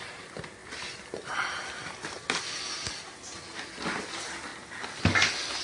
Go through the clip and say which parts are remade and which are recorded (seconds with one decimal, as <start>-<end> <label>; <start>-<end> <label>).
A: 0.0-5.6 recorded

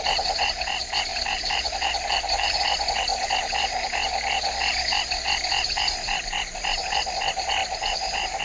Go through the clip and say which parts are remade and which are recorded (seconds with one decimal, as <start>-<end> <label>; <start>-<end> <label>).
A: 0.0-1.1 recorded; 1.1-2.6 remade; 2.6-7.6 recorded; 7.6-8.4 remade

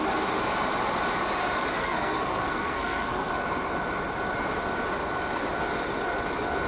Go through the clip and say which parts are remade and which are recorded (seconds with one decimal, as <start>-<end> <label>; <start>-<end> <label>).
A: 0.0-1.8 recorded; 1.8-3.3 remade; 3.3-6.7 recorded

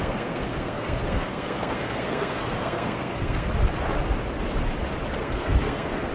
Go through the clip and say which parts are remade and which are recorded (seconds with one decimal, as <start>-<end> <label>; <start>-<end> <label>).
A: 0.0-3.5 remade; 3.5-5.2 recorded; 5.2-6.1 remade